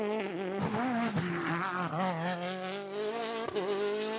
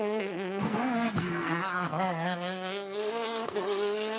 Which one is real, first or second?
first